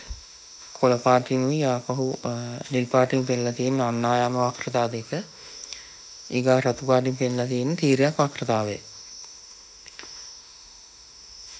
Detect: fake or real fake